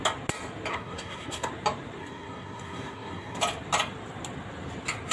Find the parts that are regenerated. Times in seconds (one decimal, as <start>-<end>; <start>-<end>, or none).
0.7-1.5; 2.0-3.4